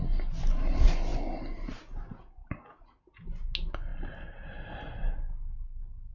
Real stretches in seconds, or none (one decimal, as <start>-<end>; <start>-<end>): 0.0-6.1